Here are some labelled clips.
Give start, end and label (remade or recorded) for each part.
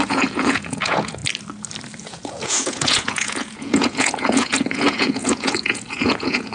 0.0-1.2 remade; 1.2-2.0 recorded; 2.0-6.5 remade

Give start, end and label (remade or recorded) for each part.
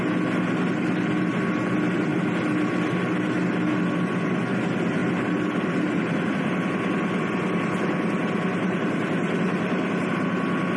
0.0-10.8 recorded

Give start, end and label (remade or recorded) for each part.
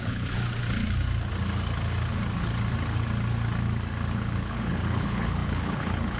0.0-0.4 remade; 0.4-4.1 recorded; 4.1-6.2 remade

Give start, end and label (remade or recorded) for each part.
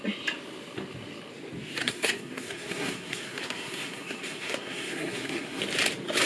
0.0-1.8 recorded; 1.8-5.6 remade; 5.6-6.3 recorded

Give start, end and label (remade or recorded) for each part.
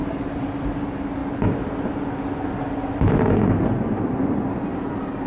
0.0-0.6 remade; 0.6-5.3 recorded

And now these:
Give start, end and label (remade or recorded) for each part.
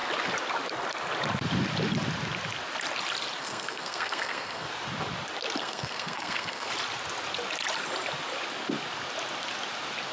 0.0-3.4 recorded; 3.4-4.7 remade; 4.7-5.6 recorded; 5.6-6.7 remade; 6.7-10.1 recorded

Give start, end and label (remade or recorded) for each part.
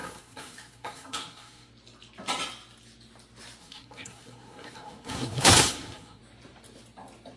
0.0-1.7 remade; 1.7-3.6 recorded; 3.6-6.2 remade; 6.2-7.4 recorded